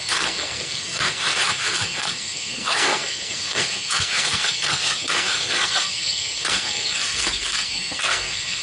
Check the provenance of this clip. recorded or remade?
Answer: remade